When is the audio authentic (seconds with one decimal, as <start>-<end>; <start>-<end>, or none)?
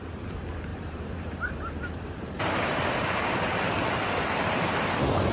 0.0-0.7; 3.9-5.3